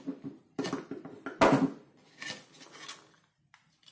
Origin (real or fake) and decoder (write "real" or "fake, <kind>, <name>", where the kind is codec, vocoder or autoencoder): real